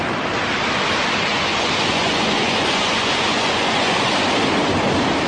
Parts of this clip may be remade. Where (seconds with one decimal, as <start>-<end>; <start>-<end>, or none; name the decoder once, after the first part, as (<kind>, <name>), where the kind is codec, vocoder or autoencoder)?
1.3-4.1 (vocoder, Vocos)